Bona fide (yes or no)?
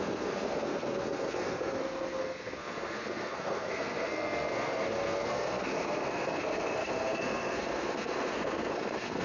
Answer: no